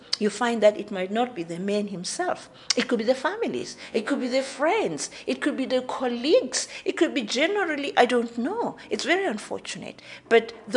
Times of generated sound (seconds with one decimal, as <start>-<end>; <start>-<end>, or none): 3.6-4.6